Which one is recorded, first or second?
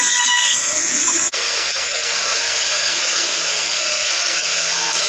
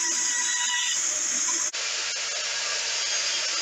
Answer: second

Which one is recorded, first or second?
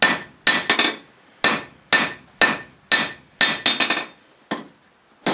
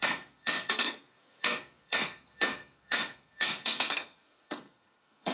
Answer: first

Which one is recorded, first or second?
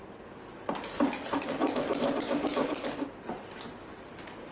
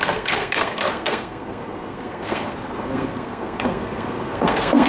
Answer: first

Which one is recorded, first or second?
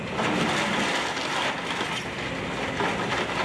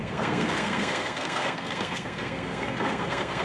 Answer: first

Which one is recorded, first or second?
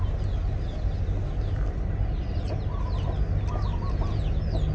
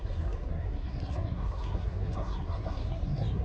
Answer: first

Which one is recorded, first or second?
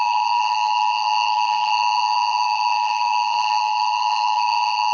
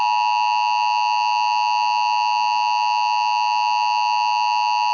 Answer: second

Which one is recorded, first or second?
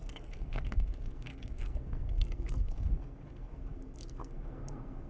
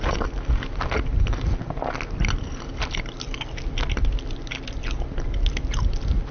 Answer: second